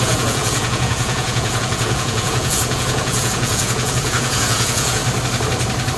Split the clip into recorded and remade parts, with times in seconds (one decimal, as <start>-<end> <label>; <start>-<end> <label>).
0.0-5.0 remade; 5.0-6.0 recorded